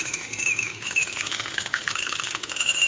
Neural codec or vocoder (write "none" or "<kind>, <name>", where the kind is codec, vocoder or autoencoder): autoencoder, DAC-VAE